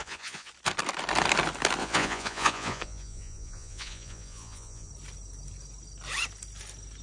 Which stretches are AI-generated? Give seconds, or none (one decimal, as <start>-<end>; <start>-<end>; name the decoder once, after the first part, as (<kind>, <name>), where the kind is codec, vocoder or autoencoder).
0.0-0.5 (vocoder, Vocos); 1.8-4.9